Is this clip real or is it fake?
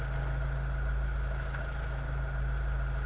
real